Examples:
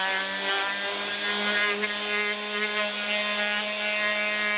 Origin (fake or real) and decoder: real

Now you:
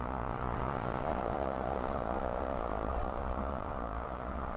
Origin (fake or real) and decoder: fake, vocoder, Vocos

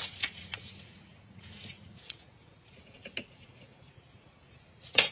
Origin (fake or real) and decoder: fake, vocoder, Vocos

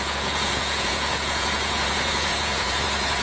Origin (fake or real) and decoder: fake, vocoder, Vocos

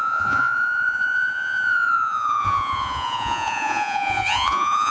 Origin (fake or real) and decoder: fake, vocoder, Vocos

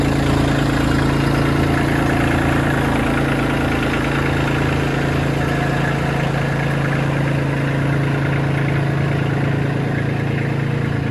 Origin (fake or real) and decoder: real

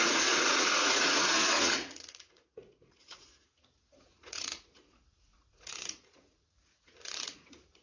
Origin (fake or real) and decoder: fake, vocoder, Vocos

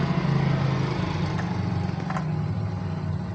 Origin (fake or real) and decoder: real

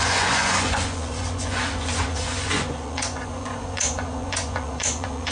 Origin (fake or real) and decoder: fake, vocoder, Vocos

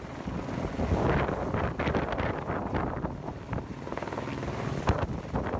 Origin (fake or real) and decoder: real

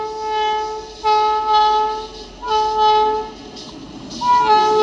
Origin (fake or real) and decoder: real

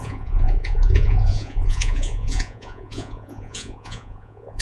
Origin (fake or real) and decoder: fake, vocoder, Vocos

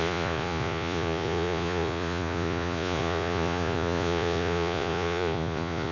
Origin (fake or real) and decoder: fake, vocoder, Vocos